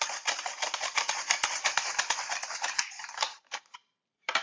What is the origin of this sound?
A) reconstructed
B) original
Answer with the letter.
A